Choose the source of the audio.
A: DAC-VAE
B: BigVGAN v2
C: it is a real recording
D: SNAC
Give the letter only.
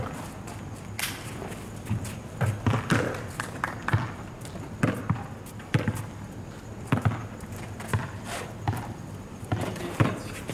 C